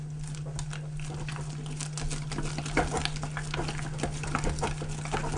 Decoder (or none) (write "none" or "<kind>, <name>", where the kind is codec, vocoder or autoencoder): none